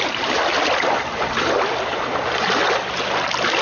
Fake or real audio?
real